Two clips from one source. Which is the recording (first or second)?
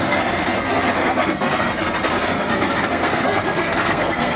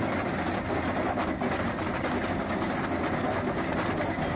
second